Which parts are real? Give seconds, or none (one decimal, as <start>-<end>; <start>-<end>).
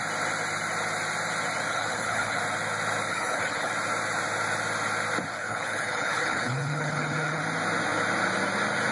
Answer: 0.0-1.7; 2.4-3.1; 3.7-5.3; 7.4-8.9